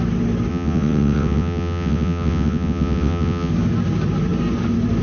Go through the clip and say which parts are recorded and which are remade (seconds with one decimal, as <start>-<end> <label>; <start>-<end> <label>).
0.0-0.5 recorded; 0.5-3.5 remade; 3.5-5.0 recorded